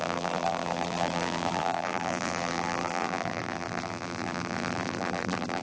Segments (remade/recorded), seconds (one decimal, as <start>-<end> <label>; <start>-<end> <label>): 0.0-5.6 remade